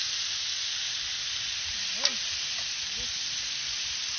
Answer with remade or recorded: recorded